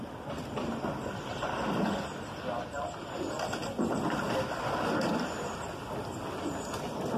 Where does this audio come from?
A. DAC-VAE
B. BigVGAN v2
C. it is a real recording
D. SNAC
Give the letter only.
C